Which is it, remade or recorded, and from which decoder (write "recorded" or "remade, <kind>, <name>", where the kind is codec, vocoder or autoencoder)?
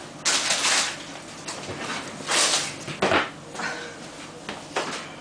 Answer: recorded